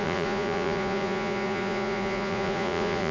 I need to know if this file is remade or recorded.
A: remade